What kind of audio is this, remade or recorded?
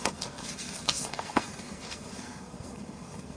remade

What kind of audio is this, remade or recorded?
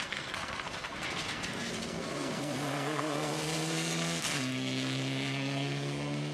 remade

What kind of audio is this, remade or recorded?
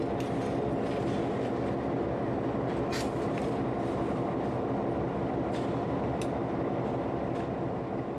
recorded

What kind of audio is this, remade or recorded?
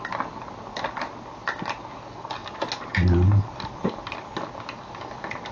recorded